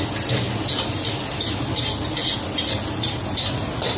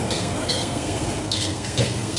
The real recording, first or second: first